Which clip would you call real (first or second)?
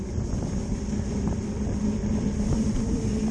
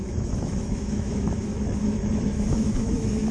first